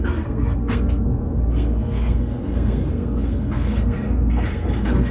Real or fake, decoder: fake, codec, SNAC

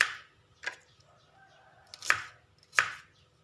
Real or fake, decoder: real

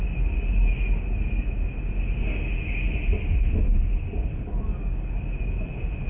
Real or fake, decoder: real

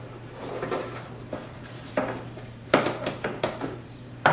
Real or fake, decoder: fake, vocoder, BigVGAN v2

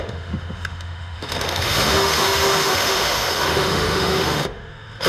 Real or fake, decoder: fake, autoencoder, DAC-VAE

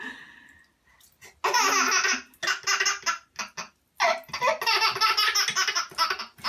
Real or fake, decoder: real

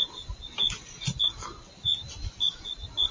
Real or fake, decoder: real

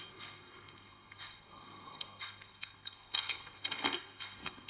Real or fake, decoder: fake, codec, SNAC